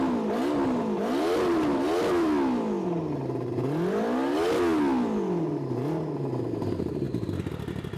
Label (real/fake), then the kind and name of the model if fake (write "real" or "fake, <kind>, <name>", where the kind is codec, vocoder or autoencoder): real